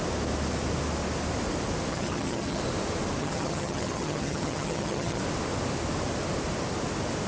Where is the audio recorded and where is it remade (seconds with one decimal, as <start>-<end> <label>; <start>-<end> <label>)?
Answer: 0.0-1.9 recorded; 1.9-2.6 remade; 2.6-3.2 recorded; 3.2-5.2 remade; 5.2-7.3 recorded

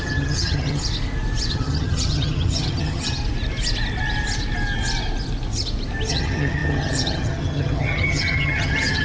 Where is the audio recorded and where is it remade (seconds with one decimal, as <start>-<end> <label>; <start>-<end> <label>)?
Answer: 0.0-0.8 remade; 0.8-1.5 recorded; 1.5-3.2 remade; 3.2-6.1 recorded; 6.1-9.0 remade

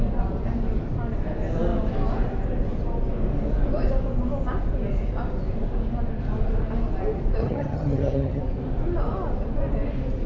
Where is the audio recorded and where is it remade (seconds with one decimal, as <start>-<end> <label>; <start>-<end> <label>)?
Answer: 0.0-7.4 recorded; 7.4-8.4 remade; 8.4-10.3 recorded

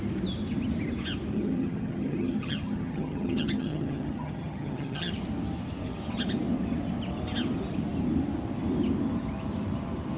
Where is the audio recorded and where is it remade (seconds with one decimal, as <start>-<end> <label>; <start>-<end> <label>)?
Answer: 0.0-1.3 recorded; 1.3-5.1 remade; 5.1-10.2 recorded

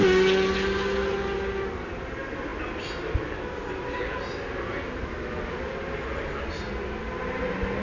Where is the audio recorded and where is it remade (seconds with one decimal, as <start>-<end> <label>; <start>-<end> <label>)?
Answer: 0.0-7.8 recorded

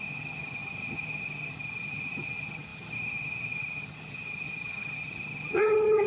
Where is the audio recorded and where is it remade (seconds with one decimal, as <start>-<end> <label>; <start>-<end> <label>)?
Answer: 0.0-6.1 remade

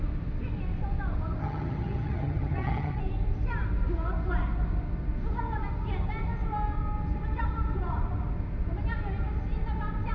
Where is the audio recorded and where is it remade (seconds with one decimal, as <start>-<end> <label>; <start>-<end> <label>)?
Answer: 0.0-1.4 recorded; 1.4-3.0 remade; 3.0-10.1 recorded